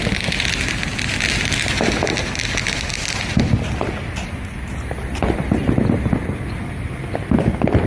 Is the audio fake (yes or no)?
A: no